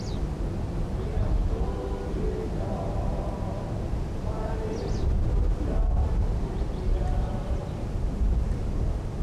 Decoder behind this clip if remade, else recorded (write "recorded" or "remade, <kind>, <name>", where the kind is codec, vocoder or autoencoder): recorded